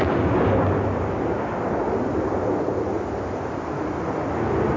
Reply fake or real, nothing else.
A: real